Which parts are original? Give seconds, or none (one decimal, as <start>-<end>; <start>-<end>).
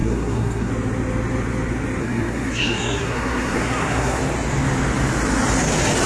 0.7-2.0; 4.2-6.1